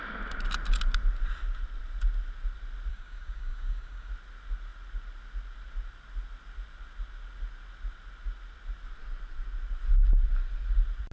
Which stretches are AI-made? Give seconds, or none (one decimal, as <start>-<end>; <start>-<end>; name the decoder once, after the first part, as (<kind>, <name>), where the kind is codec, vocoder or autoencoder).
2.9-4.1 (codec, DAC)